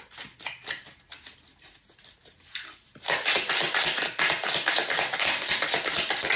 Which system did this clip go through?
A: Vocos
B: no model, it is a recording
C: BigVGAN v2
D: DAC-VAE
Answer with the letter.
B